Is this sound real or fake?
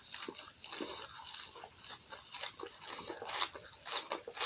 real